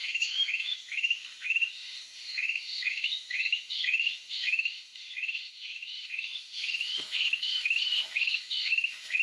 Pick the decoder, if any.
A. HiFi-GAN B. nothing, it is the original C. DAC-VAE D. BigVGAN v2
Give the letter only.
C